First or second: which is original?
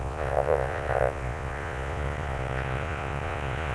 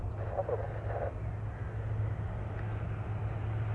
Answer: second